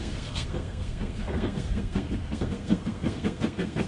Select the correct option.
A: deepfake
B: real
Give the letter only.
A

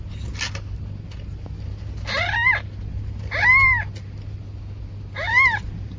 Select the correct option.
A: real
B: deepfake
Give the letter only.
A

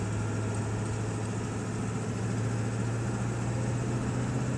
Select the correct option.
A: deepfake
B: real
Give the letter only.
B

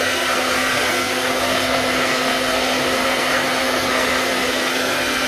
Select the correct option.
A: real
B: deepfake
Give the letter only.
B